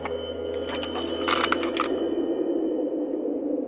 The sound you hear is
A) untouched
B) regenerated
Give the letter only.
A